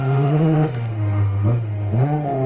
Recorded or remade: remade